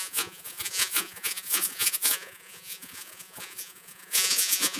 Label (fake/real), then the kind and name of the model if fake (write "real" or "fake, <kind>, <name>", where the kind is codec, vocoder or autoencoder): fake, vocoder, Vocos